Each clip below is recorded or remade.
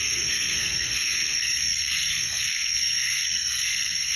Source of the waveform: remade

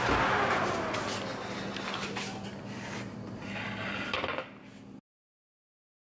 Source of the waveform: recorded